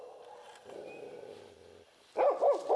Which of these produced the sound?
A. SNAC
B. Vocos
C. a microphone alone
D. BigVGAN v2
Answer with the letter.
C